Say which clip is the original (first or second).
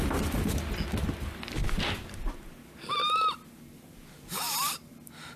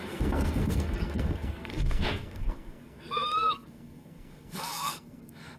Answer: first